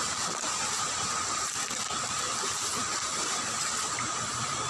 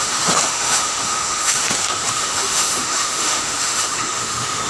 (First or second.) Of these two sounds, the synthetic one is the second